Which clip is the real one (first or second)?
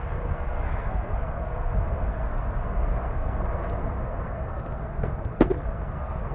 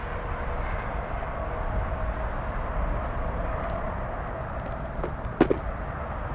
second